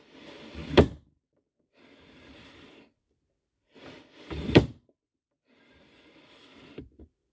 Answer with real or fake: fake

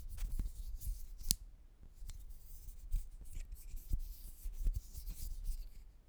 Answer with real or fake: real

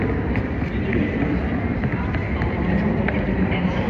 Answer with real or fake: fake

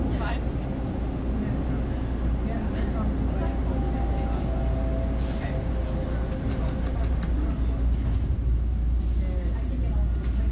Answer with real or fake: real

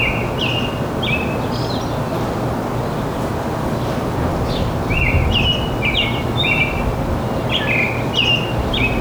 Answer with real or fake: real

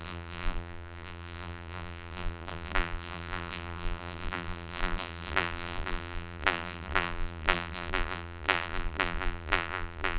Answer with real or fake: fake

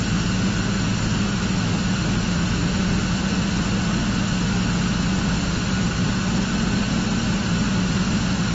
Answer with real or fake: real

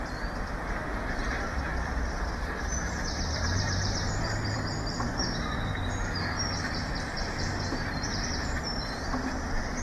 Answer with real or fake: fake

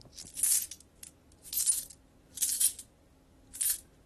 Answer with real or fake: real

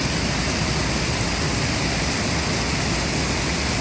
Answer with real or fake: real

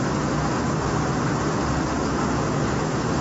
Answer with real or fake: fake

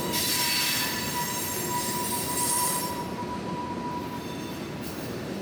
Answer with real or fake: fake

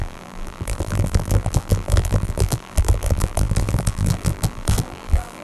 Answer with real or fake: fake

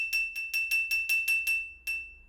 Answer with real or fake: real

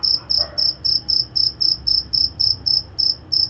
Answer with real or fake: real